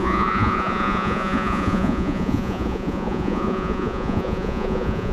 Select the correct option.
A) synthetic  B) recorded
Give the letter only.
A